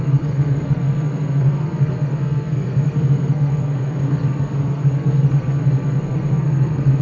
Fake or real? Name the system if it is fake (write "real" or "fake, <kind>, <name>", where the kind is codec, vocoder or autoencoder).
fake, codec, SNAC